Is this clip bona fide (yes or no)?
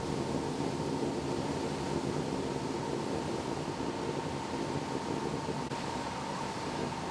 yes